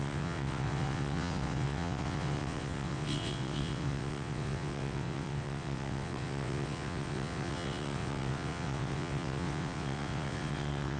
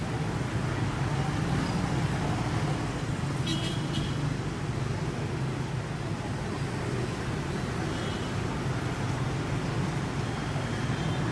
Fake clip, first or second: first